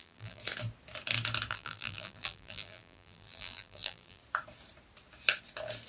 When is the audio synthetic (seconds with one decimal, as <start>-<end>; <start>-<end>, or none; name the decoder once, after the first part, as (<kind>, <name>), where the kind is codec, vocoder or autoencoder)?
0.0-0.4 (vocoder, BigVGAN v2); 1.5-4.2